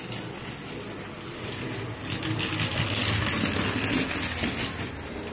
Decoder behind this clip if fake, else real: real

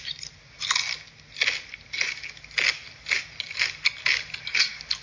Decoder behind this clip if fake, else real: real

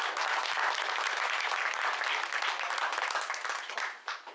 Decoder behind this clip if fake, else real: real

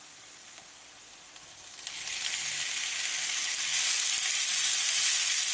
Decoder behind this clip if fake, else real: real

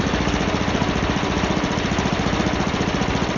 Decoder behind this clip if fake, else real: real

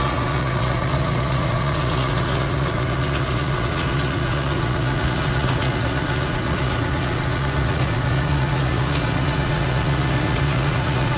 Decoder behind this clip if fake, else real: fake, vocoder, Vocos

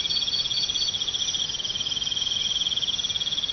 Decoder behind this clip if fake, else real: real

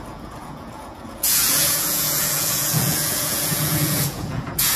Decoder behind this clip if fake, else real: fake, vocoder, Vocos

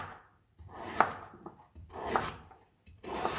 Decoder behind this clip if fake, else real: real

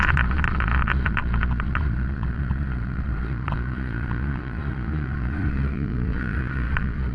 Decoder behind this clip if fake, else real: fake, vocoder, Vocos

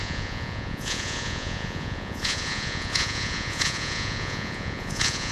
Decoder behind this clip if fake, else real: fake, vocoder, Vocos